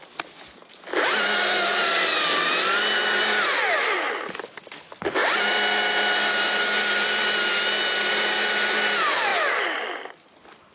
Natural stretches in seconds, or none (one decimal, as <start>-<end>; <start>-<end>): 0.0-10.7